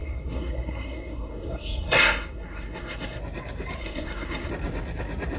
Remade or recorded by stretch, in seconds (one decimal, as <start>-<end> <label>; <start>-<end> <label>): 0.0-3.2 remade; 3.2-3.8 recorded; 3.8-4.5 remade; 4.5-5.4 recorded